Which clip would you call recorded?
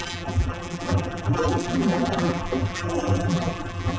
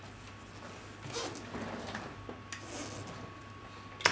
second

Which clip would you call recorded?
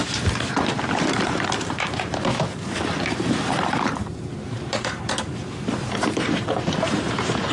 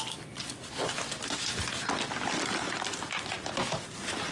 second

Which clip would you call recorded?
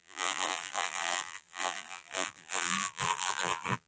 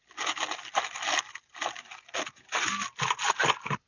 second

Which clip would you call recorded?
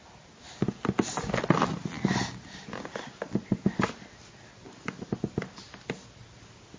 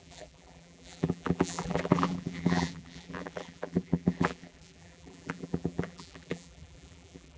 first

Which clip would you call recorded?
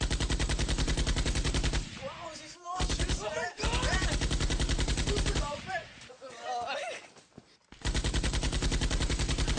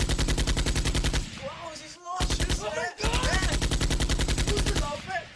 second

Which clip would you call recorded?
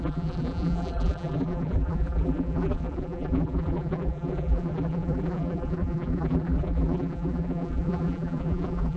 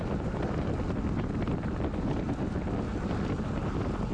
second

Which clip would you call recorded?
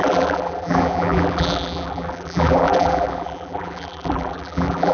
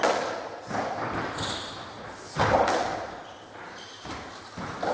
second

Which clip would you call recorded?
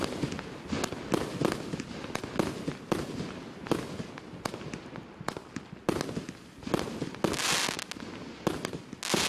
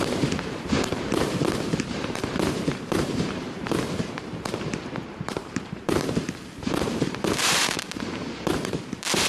first